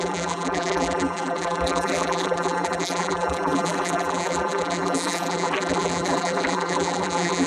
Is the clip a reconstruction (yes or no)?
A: yes